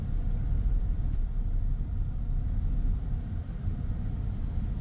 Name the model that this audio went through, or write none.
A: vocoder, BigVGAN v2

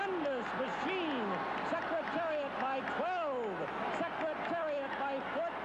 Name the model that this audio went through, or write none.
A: none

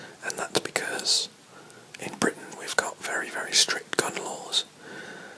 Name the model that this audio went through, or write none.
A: none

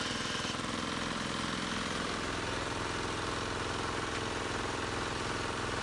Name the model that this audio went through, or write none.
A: vocoder, BigVGAN v2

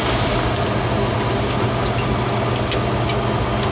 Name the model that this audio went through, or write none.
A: none